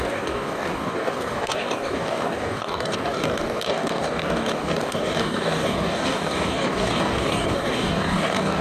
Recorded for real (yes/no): no